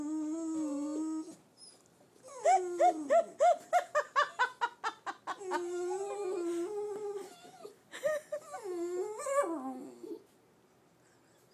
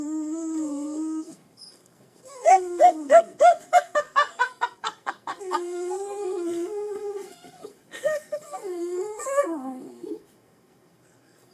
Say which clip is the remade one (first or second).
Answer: second